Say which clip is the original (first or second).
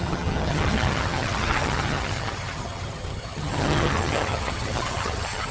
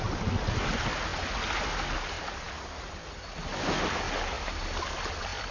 second